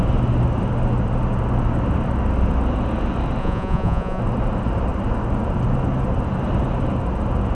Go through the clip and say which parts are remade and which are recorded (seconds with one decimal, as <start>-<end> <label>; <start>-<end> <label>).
0.0-3.4 recorded; 3.4-4.2 remade; 4.2-7.5 recorded